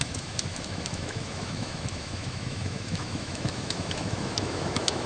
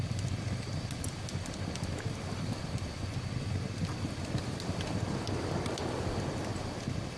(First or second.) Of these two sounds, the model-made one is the first